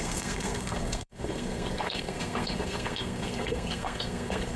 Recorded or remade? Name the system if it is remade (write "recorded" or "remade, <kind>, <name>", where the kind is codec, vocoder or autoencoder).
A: remade, codec, SNAC